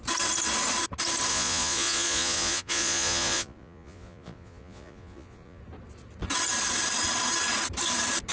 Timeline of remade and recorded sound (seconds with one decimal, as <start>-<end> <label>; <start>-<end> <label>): 0.0-1.3 recorded; 1.3-5.6 remade; 5.6-8.3 recorded